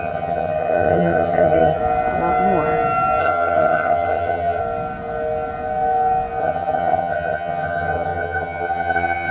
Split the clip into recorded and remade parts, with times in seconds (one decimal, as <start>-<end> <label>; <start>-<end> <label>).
0.0-1.8 remade; 1.8-3.2 recorded; 3.2-4.6 remade; 4.6-6.4 recorded; 6.4-9.3 remade